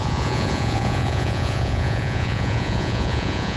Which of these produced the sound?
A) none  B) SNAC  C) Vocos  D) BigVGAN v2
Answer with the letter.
C